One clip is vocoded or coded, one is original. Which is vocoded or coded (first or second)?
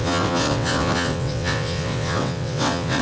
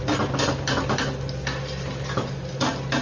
first